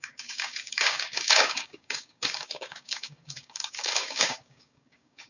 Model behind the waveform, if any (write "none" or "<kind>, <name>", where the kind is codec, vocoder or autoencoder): codec, DAC